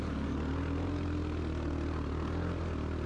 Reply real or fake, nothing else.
real